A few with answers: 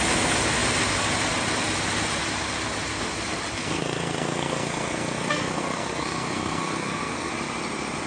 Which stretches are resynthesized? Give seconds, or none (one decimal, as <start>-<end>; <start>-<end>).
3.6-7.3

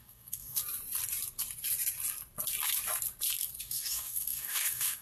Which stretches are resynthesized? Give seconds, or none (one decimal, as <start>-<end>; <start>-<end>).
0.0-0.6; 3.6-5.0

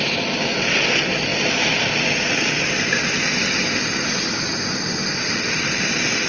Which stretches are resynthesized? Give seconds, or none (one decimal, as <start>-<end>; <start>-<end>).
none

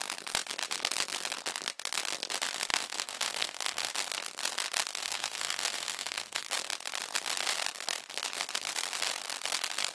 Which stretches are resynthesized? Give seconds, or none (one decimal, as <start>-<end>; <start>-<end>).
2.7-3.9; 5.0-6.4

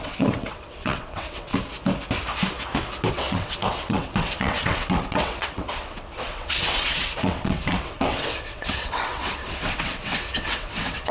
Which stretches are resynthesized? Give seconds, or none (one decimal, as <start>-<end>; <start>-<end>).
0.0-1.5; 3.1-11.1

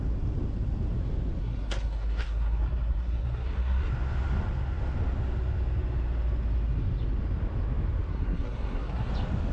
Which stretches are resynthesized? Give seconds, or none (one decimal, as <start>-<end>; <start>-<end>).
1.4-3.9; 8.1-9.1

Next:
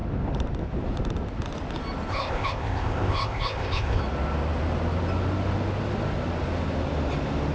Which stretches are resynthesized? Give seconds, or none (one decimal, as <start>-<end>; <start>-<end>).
2.1-4.0

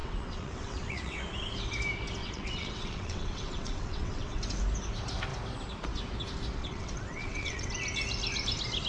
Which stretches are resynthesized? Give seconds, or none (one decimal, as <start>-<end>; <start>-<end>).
0.0-1.2; 2.2-4.4; 6.6-7.7